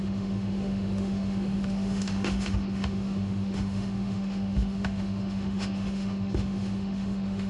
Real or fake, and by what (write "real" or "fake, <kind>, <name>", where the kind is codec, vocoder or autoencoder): fake, autoencoder, DAC-VAE